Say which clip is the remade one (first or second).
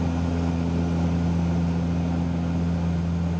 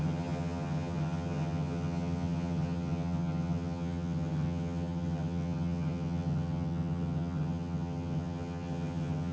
second